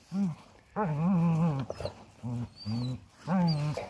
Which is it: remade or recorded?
recorded